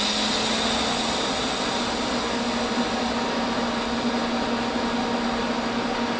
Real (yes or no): yes